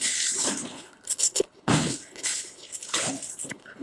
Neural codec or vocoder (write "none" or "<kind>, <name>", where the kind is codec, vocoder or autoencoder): codec, HILCodec